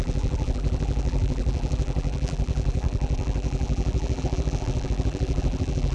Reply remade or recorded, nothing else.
remade